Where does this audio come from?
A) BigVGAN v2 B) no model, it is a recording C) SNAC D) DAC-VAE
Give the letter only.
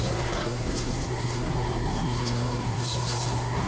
C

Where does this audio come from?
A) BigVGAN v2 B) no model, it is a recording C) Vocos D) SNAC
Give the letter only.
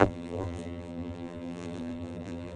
A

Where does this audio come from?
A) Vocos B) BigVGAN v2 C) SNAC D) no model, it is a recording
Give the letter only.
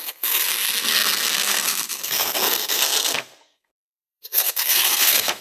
C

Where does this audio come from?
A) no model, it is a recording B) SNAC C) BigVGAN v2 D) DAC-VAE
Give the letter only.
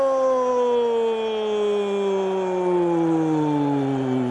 A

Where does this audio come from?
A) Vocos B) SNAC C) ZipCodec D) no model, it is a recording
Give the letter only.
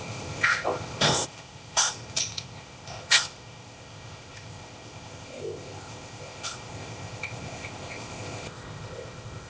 C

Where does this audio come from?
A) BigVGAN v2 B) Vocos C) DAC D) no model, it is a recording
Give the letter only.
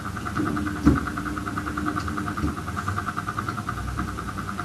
A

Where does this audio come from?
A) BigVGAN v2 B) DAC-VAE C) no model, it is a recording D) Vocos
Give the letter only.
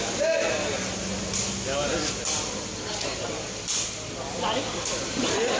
C